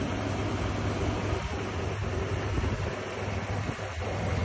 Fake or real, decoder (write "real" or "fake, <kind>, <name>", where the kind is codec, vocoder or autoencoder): real